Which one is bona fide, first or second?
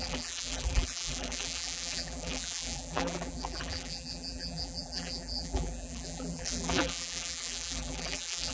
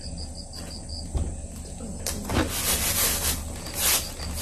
second